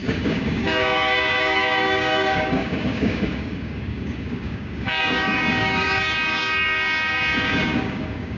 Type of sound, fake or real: fake